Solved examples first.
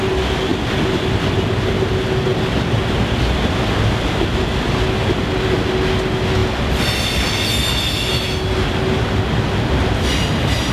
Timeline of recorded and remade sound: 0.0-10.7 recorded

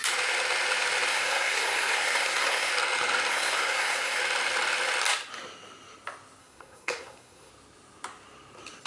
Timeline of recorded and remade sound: 0.0-1.1 recorded; 1.1-2.7 remade; 2.7-3.3 recorded; 3.3-4.2 remade; 4.2-6.4 recorded; 6.4-7.5 remade; 7.5-8.9 recorded

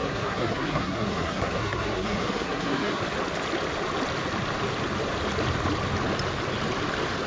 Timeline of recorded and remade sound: 0.0-3.0 remade; 3.0-7.3 recorded

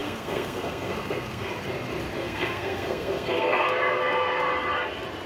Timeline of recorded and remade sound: 0.0-1.5 remade; 1.5-2.2 recorded; 2.2-4.5 remade; 4.5-5.3 recorded

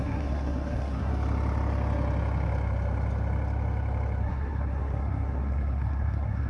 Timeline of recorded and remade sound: 0.0-1.1 remade; 1.1-4.2 recorded; 4.2-6.5 remade

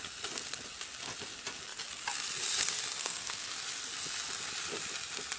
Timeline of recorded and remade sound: 0.0-3.0 recorded; 3.0-3.5 remade; 3.5-5.4 recorded

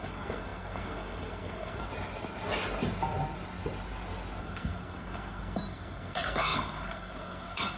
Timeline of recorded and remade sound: 0.0-1.9 remade; 1.9-4.4 recorded; 4.4-7.8 remade

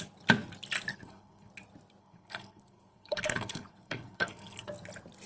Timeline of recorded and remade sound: 0.0-0.9 recorded; 0.9-1.5 remade; 1.5-2.0 recorded; 2.0-4.7 remade; 4.7-5.3 recorded